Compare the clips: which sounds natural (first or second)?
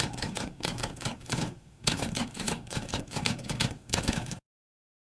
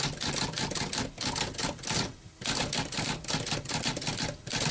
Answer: second